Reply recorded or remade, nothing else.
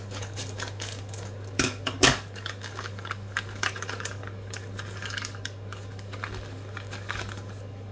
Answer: remade